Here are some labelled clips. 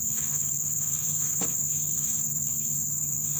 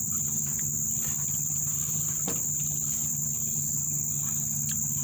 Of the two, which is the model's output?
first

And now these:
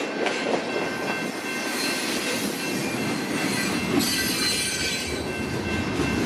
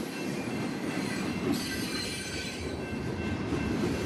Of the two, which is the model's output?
second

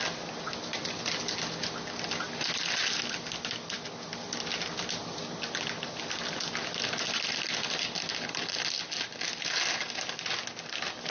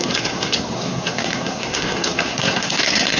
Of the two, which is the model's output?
second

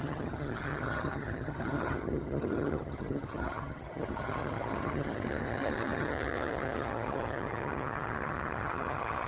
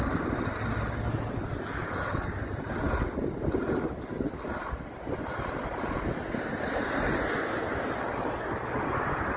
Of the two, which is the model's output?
first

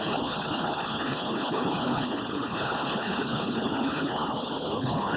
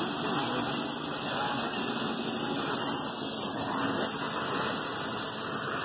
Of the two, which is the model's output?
first